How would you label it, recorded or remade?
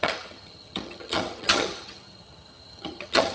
remade